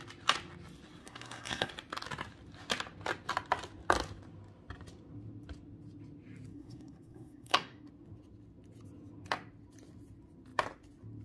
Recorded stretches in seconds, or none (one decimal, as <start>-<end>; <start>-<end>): 0.0-1.0; 1.7-6.5; 7.9-11.2